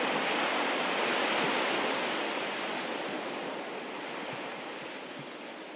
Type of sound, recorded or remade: recorded